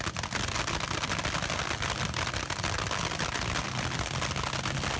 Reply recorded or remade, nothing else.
recorded